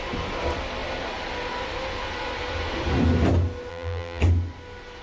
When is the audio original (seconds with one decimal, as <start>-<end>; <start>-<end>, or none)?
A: 0.0-3.7; 4.2-5.0